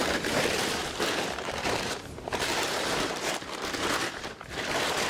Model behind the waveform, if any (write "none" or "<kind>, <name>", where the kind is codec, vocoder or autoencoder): vocoder, BigVGAN v2